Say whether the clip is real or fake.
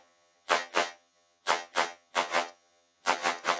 fake